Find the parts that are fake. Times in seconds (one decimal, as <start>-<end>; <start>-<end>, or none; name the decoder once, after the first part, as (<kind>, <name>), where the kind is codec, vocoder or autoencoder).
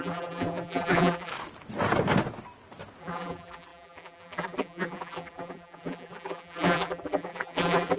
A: 0.0-1.3 (vocoder, BigVGAN v2); 3.0-8.0